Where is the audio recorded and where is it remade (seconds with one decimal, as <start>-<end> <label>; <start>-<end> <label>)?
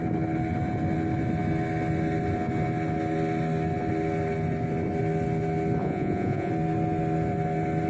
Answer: 0.0-5.8 recorded; 5.8-6.5 remade; 6.5-7.9 recorded